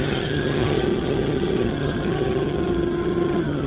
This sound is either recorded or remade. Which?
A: remade